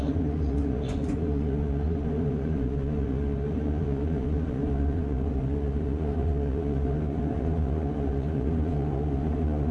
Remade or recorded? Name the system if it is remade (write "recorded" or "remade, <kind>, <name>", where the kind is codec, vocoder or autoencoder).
remade, vocoder, Vocos